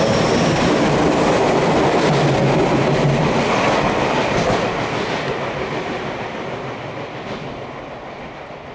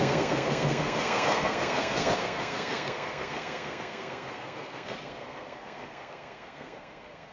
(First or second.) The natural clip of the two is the first